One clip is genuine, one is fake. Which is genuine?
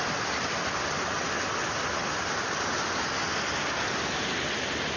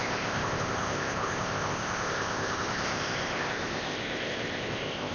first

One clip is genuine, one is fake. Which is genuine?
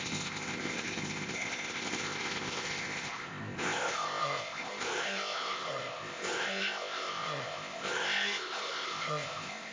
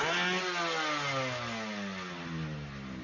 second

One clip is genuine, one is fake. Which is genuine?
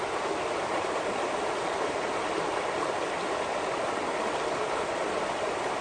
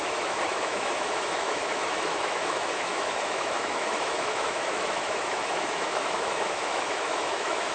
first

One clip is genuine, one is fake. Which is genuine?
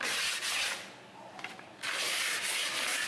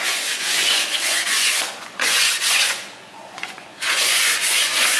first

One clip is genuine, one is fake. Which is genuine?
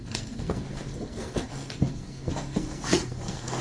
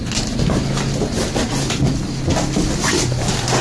second